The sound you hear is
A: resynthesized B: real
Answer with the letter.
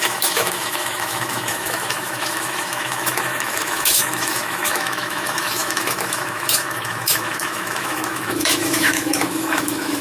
A